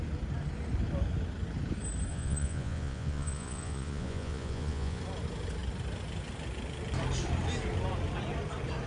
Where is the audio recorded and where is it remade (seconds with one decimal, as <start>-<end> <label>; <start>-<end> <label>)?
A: 0.0-2.1 recorded; 2.1-5.0 remade; 5.0-8.9 recorded

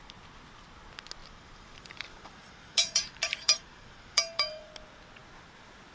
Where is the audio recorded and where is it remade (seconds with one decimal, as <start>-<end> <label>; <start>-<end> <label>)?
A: 0.0-1.2 recorded; 1.2-4.7 remade; 4.7-5.9 recorded

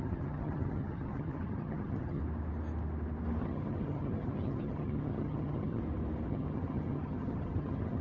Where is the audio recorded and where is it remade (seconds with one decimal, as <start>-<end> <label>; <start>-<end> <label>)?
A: 0.0-2.2 remade; 2.2-3.4 recorded; 3.4-5.8 remade; 5.8-6.3 recorded; 6.3-8.0 remade

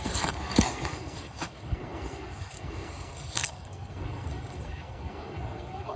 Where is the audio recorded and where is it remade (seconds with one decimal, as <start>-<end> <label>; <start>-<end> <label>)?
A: 0.0-6.0 remade

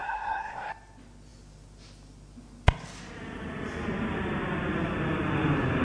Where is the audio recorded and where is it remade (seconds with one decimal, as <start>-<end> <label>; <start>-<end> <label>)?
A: 0.0-0.7 remade; 0.7-5.8 recorded